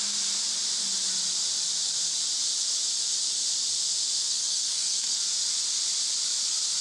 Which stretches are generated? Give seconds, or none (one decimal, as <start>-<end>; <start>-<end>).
4.2-5.2